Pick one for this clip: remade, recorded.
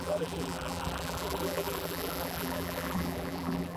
remade